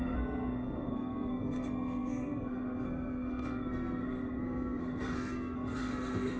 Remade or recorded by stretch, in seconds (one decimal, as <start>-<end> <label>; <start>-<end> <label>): 0.0-6.4 remade